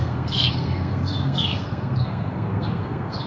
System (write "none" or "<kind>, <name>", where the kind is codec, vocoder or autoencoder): codec, SNAC